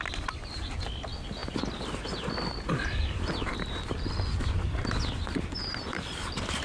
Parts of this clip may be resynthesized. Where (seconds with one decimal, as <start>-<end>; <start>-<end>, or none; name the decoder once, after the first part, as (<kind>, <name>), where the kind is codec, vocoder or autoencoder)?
none